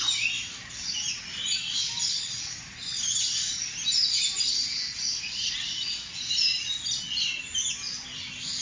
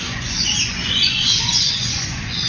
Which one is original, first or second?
first